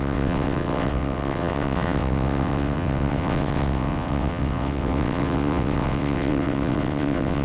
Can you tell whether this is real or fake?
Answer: fake